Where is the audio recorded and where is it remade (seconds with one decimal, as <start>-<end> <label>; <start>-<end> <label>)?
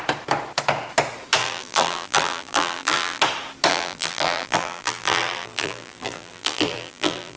0.0-1.4 recorded; 1.4-3.2 remade; 3.2-3.7 recorded; 3.7-7.4 remade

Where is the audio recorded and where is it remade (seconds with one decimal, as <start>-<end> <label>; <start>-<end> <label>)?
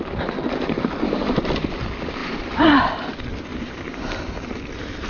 0.0-2.2 recorded; 2.2-2.8 remade; 2.8-3.5 recorded; 3.5-4.2 remade; 4.2-5.1 recorded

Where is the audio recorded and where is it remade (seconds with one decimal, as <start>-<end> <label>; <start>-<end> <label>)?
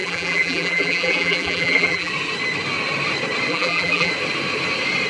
0.0-2.1 remade; 2.1-3.5 recorded; 3.5-4.1 remade; 4.1-5.1 recorded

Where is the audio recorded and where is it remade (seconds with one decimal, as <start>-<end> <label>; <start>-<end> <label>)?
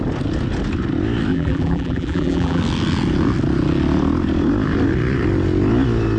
0.0-1.3 recorded; 1.3-2.6 remade; 2.6-6.2 recorded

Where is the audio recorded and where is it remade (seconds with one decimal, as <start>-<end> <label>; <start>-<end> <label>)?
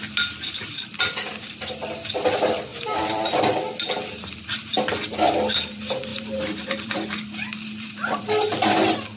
0.0-2.7 recorded; 2.7-3.4 remade; 3.4-6.1 recorded; 6.1-8.2 remade; 8.2-9.2 recorded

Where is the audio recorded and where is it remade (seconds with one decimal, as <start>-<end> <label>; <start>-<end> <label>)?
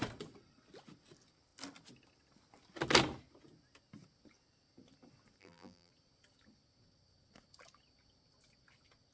0.0-5.4 recorded; 5.4-5.9 remade; 5.9-9.1 recorded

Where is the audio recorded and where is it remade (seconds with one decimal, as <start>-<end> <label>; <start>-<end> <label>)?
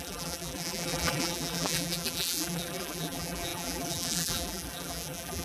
0.0-5.4 remade